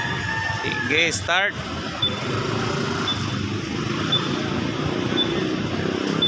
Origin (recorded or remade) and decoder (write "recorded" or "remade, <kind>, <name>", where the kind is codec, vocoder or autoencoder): recorded